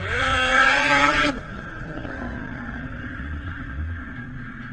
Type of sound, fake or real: fake